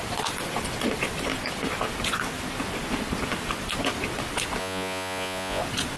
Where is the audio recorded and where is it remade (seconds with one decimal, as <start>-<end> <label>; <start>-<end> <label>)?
0.0-4.6 recorded; 4.6-5.6 remade; 5.6-6.0 recorded